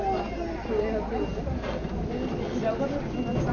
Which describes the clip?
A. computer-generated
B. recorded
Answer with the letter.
B